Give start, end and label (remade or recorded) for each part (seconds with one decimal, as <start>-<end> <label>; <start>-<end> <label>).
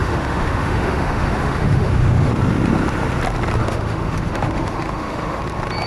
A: 0.0-2.3 remade; 2.3-3.6 recorded; 3.6-5.4 remade; 5.4-5.9 recorded